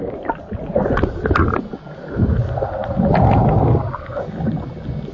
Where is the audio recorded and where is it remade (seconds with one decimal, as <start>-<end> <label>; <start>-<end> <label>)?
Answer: 0.0-5.1 recorded